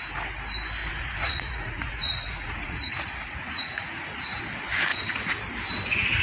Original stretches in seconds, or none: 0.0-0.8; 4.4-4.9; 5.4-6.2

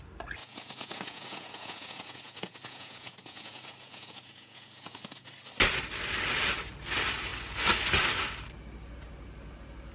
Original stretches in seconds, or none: 0.0-0.4; 5.3-9.9

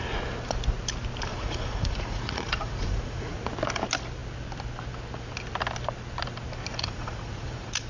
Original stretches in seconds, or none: 0.0-1.3; 3.4-6.7

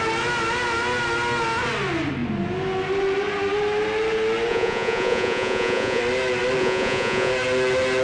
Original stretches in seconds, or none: 0.0-4.5; 6.0-6.6; 7.3-8.0

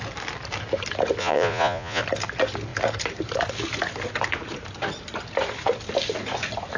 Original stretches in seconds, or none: 0.0-1.2; 2.0-6.8

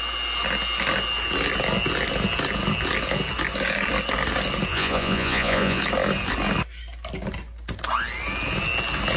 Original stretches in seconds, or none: 0.0-4.7; 5.8-9.2